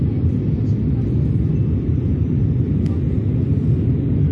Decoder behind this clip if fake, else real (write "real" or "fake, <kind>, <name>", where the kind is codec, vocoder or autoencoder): real